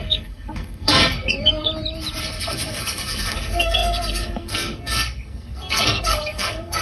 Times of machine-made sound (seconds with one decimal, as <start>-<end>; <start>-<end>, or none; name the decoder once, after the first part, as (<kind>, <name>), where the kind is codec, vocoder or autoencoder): 0.0-1.7 (codec, SNAC); 2.2-6.8